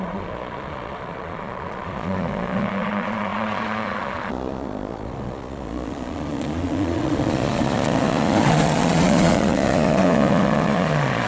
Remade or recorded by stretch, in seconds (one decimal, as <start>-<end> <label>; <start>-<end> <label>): 0.0-11.3 remade